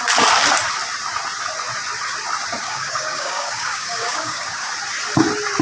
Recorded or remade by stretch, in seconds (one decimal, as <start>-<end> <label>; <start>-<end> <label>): 0.0-2.6 recorded; 2.6-4.7 remade; 4.7-5.6 recorded